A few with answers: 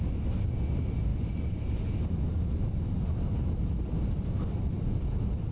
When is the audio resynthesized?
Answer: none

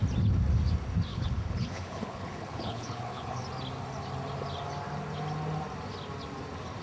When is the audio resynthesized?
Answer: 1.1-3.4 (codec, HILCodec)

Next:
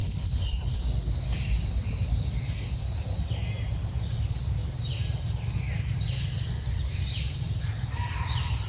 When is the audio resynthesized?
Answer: 0.0-0.8 (codec, HILCodec)

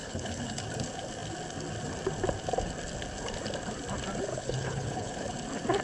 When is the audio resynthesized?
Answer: 0.0-0.6 (codec, HILCodec); 4.3-5.3

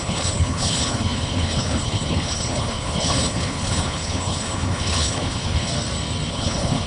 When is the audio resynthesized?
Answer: 0.0-5.7 (codec, HILCodec); 6.3-6.9

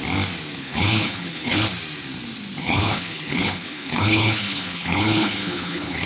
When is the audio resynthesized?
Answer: 0.6-1.7 (codec, HILCodec); 2.6-6.1

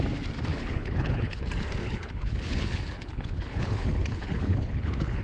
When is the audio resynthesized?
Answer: 0.5-1.4 (codec, HILCodec); 1.8-5.2

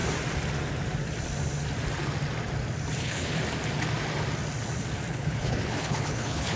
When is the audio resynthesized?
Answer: 3.0-3.4 (codec, HILCodec); 5.1-6.6